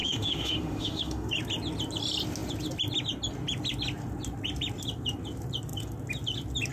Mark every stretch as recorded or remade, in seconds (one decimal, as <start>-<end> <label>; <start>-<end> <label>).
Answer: 0.0-1.3 remade; 1.3-6.7 recorded